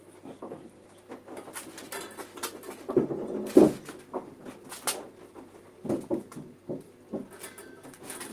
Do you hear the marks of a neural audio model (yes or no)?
no